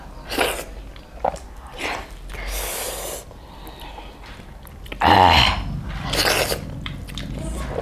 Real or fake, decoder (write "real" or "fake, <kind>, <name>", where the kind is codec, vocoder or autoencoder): real